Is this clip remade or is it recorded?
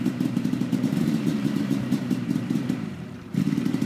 remade